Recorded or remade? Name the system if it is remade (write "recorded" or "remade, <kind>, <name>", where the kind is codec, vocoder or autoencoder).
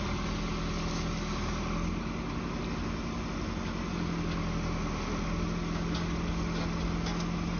recorded